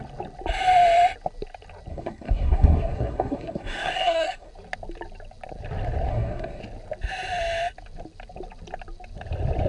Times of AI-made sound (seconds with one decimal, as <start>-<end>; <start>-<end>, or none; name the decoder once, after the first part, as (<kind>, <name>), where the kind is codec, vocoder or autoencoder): 1.9-4.5 (codec, SNAC); 6.1-6.6